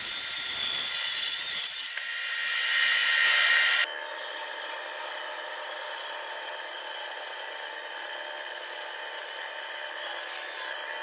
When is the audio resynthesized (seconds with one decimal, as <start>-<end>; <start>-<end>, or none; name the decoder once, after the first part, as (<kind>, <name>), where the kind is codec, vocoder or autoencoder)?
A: none